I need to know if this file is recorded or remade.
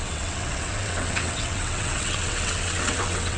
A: remade